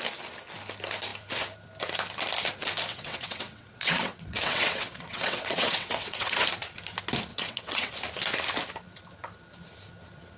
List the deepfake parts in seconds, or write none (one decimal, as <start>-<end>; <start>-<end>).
2.9-6.4; 7.3-7.9